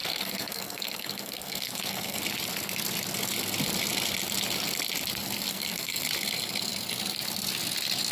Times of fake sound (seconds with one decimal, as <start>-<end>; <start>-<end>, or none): 0.0-2.2; 5.5-6.0